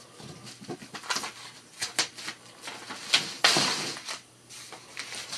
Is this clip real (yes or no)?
yes